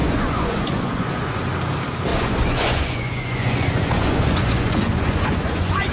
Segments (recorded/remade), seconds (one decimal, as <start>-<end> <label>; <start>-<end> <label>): 0.0-1.4 remade; 1.4-2.1 recorded; 2.1-5.9 remade